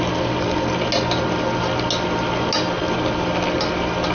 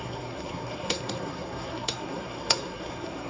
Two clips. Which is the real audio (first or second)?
first